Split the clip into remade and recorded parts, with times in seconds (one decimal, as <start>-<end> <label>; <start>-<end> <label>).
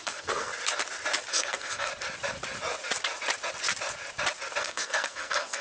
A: 0.0-0.5 remade; 0.5-1.3 recorded; 1.3-1.9 remade; 1.9-4.6 recorded; 4.6-5.6 remade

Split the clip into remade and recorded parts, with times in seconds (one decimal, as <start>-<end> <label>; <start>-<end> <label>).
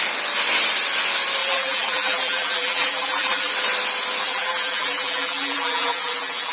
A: 0.0-1.4 recorded; 1.4-3.5 remade; 3.5-4.2 recorded; 4.2-6.5 remade